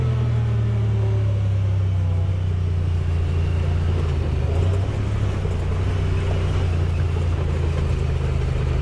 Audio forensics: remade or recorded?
recorded